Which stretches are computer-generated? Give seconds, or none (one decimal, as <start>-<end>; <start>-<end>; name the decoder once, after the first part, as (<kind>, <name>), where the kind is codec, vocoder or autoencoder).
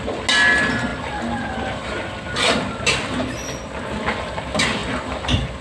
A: none